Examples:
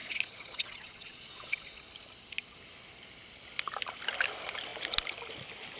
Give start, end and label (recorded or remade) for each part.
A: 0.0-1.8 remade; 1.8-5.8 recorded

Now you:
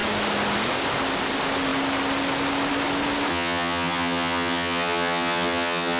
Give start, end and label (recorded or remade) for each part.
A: 0.0-3.3 recorded; 3.3-6.0 remade

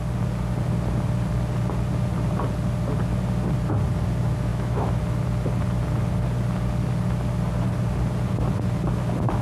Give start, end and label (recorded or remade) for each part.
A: 0.0-4.5 recorded; 4.5-5.0 remade; 5.0-9.4 recorded